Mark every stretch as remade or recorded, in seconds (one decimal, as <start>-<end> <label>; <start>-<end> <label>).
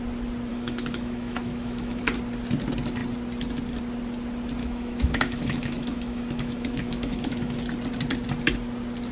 0.0-0.5 recorded; 0.5-2.0 remade; 2.0-4.6 recorded; 4.6-7.6 remade; 7.6-9.1 recorded